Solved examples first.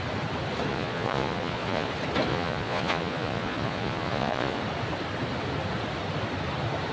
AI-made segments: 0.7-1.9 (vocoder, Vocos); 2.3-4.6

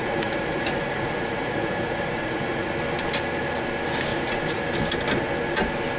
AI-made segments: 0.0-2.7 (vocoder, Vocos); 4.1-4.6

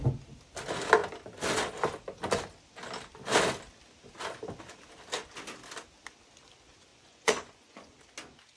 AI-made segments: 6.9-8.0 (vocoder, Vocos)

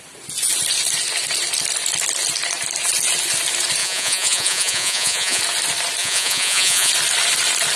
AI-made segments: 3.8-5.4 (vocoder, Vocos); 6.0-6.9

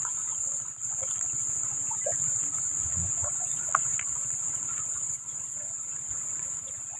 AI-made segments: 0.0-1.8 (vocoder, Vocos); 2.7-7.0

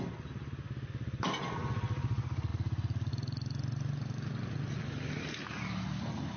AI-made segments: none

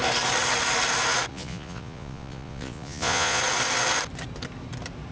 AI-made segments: 1.3-3.4 (vocoder, Vocos)

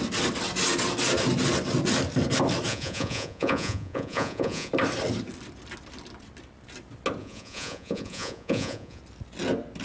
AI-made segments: 2.7-4.7 (vocoder, Vocos); 7.2-9.0